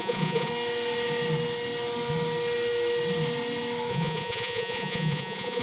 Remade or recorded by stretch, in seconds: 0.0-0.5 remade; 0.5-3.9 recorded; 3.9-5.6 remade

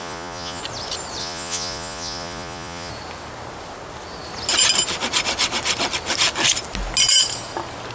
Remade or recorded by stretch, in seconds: 0.0-0.6 remade; 0.6-1.2 recorded; 1.2-2.9 remade; 2.9-7.9 recorded

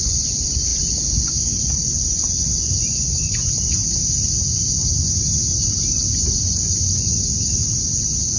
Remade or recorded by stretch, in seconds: 0.0-3.8 remade; 3.8-6.2 recorded; 6.2-7.3 remade; 7.3-7.8 recorded; 7.8-8.4 remade

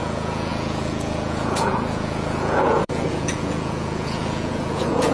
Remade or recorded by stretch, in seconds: 0.0-5.1 remade

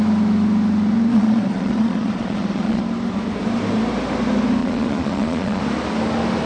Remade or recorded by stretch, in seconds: 0.0-1.1 recorded; 1.1-2.8 remade; 2.8-4.6 recorded; 4.6-5.6 remade; 5.6-6.5 recorded

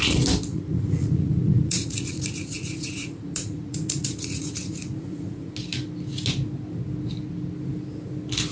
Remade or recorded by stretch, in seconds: 0.0-0.5 recorded; 0.5-5.5 remade; 5.5-8.5 recorded

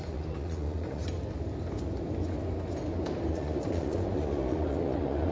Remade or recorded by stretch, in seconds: 0.0-1.0 remade; 1.0-3.3 recorded; 3.3-5.3 remade

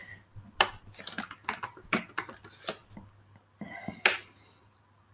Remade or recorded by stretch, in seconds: 0.0-5.1 recorded